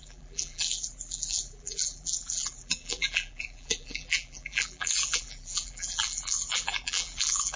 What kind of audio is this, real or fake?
fake